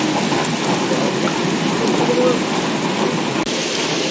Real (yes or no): yes